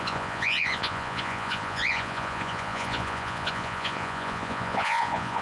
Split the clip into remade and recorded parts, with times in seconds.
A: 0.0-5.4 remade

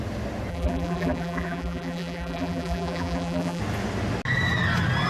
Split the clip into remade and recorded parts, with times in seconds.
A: 0.0-0.5 recorded; 0.5-3.6 remade; 3.6-5.1 recorded

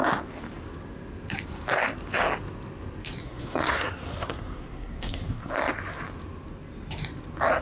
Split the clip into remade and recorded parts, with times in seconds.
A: 0.0-3.2 recorded; 3.2-5.5 remade; 5.5-7.6 recorded

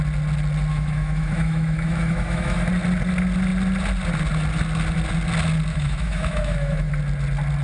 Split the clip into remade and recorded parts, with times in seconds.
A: 0.0-0.7 recorded; 0.7-2.7 remade; 2.7-5.7 recorded; 5.7-6.9 remade; 6.9-7.6 recorded

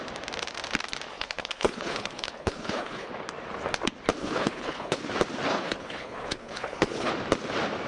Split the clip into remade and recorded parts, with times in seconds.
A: 0.0-1.1 recorded; 1.1-3.1 remade; 3.1-4.2 recorded; 4.2-5.0 remade; 5.0-5.5 recorded; 5.5-7.1 remade; 7.1-7.9 recorded

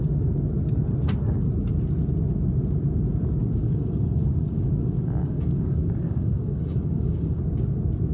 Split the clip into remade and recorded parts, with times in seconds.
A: 0.0-3.4 recorded; 3.4-7.4 remade; 7.4-8.1 recorded

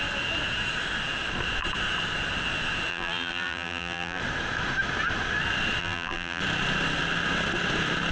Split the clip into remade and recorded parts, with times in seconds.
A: 0.0-2.9 recorded; 2.9-4.2 remade; 4.2-5.8 recorded; 5.8-6.4 remade; 6.4-8.1 recorded